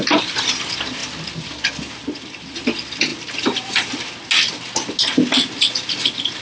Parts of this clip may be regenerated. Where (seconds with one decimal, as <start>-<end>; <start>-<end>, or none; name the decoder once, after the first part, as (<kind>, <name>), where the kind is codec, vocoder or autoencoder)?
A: none